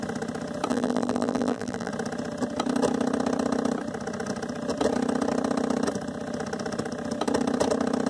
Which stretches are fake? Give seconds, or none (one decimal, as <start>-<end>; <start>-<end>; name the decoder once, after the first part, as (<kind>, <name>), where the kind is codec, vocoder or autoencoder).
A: 0.7-1.9 (vocoder, BigVGAN v2)